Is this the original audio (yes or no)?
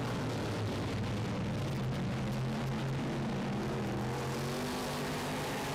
yes